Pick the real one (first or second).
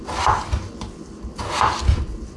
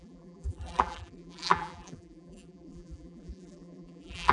first